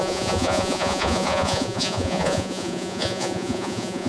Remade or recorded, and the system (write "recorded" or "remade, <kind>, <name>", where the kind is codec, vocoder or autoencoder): remade, vocoder, Vocos